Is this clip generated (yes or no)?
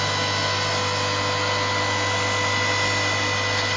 no